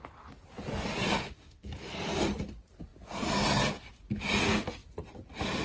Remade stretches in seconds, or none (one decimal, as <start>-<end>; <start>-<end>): 1.2-1.7